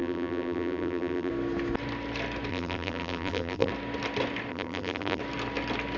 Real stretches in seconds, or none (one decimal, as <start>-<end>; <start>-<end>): 1.3-2.5; 3.7-4.5; 5.2-6.0